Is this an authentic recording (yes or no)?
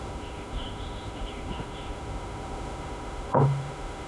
no